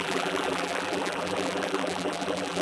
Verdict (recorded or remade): remade